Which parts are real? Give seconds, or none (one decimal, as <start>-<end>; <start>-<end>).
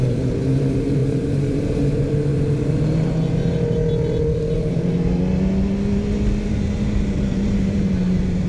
2.3-6.5